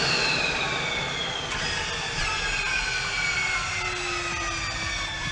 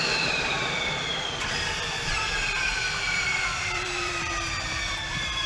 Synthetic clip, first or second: second